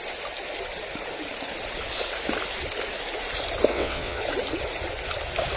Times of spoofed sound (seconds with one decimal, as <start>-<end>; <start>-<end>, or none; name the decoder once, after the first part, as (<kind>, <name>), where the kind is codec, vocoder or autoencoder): 3.7-4.2 (vocoder, WaveNeXt)